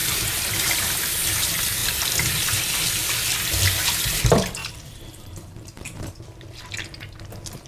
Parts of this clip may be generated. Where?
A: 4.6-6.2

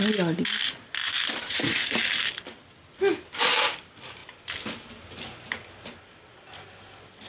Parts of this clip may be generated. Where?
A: 1.0-2.0

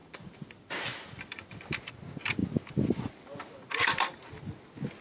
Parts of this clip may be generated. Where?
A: 0.0-1.9; 2.4-4.5

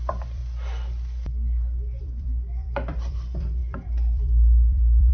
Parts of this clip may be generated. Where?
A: 0.0-0.4; 2.0-5.1

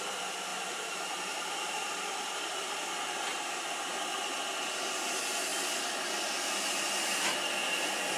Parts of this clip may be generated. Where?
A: 0.5-2.7; 3.3-3.9

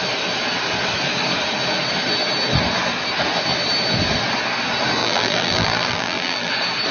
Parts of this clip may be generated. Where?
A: 5.0-6.5

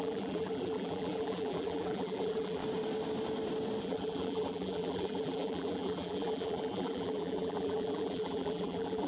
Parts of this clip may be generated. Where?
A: 0.0-2.6; 3.8-9.1